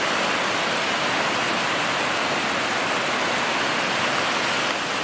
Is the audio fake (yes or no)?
no